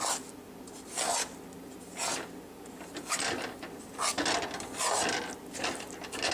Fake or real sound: real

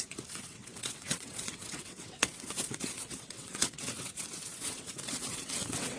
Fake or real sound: fake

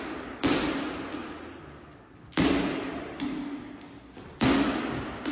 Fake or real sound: real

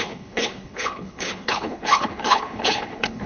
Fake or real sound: fake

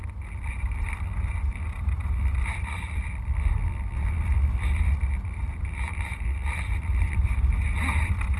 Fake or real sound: real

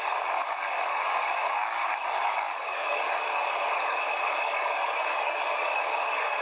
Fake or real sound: fake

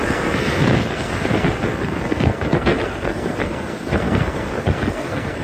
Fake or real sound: fake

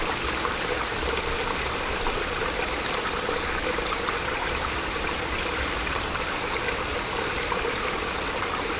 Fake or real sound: real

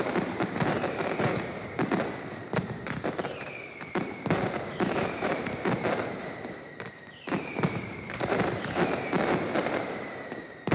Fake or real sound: fake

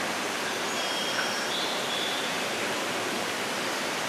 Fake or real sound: fake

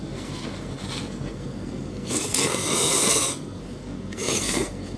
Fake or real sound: fake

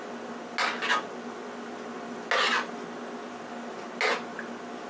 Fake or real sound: real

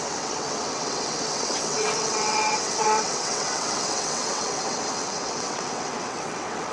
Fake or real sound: fake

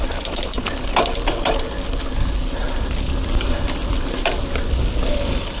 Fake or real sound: real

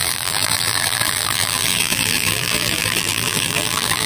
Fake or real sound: fake